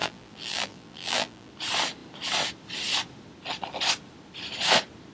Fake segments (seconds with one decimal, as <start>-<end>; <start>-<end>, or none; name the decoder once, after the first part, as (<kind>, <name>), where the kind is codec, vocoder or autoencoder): 0.0-1.5 (vocoder, BigVGAN v2)